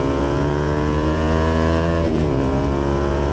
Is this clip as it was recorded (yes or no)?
no